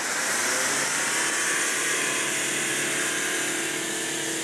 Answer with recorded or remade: recorded